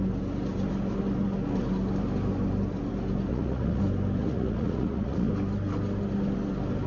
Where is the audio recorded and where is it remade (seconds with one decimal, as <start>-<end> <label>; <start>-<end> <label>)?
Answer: 0.0-3.3 recorded; 3.3-3.8 remade; 3.8-4.2 recorded; 4.2-5.3 remade; 5.3-6.9 recorded